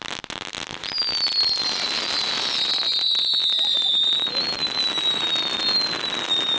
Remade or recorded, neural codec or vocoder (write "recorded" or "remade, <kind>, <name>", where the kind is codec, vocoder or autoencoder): recorded